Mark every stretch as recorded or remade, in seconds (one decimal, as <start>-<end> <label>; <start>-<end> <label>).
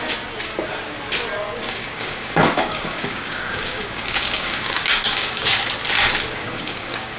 0.0-1.6 recorded; 1.6-5.5 remade; 5.5-6.4 recorded; 6.4-7.2 remade